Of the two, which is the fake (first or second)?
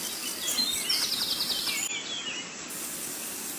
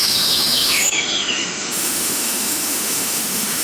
second